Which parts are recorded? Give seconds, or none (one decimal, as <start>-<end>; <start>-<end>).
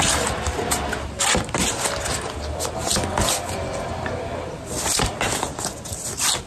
0.0-6.5